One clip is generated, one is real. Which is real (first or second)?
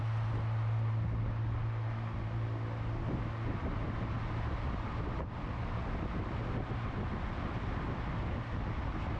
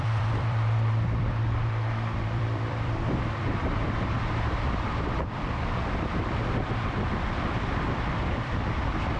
first